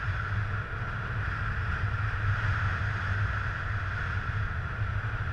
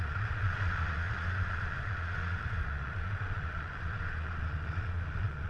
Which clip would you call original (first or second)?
first